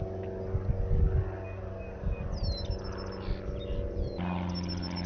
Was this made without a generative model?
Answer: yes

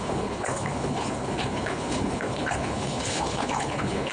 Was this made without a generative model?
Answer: no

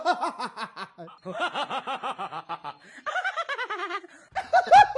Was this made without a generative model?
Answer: yes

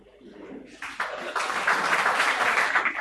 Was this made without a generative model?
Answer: yes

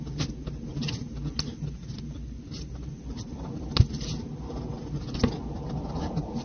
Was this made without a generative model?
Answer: yes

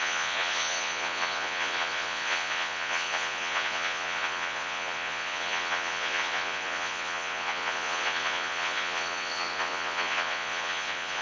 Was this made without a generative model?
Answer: no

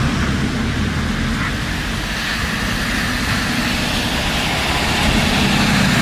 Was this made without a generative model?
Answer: yes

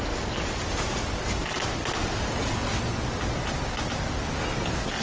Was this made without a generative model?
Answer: yes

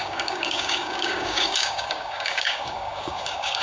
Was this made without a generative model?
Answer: no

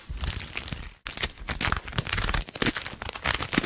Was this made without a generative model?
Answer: yes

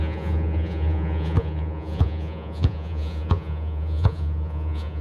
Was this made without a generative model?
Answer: no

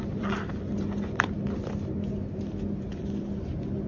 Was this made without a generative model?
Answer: yes